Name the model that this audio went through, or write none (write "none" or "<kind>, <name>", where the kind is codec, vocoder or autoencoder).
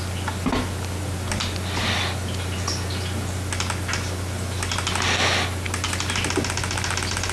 none